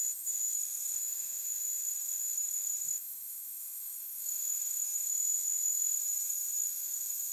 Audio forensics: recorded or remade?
remade